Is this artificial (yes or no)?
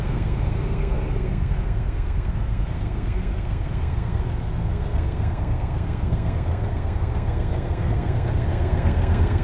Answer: yes